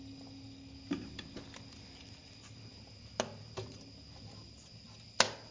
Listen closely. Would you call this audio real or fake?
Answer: real